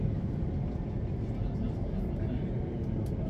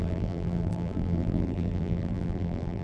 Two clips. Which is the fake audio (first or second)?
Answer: second